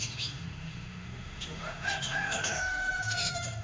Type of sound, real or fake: fake